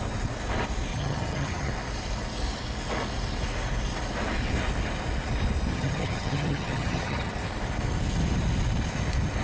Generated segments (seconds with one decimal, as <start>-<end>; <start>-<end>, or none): 0.9-1.7; 5.7-7.3